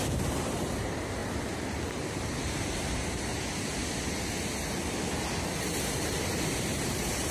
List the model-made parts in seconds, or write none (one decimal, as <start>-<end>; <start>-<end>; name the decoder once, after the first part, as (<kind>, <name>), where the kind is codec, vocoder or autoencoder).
0.0-1.2 (vocoder, BigVGAN v2); 2.4-3.8; 6.5-7.3